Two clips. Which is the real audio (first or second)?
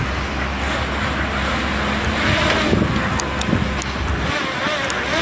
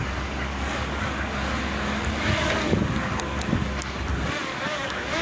first